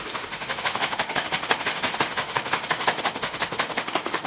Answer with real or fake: fake